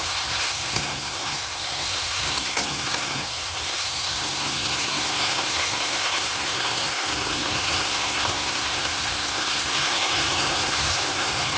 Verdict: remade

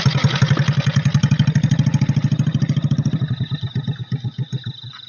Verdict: recorded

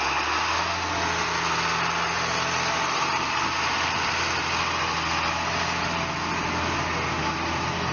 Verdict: recorded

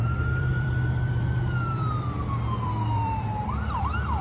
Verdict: remade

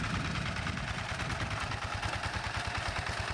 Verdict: recorded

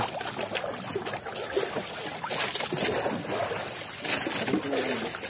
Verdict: recorded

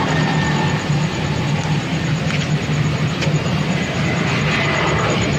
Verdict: recorded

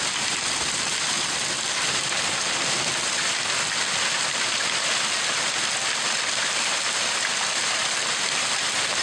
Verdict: recorded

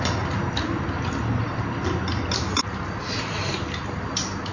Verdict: recorded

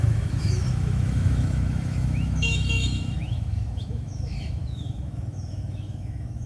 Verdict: remade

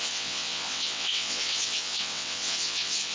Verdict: remade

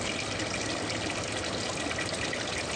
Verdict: recorded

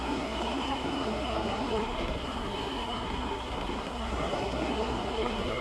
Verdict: remade